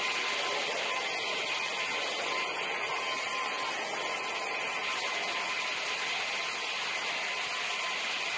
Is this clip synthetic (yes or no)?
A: no